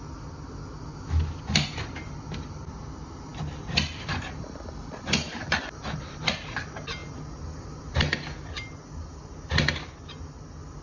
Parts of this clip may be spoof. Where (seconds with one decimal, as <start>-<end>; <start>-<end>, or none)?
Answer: 3.3-6.2